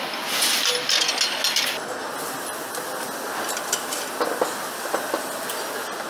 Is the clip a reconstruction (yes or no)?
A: no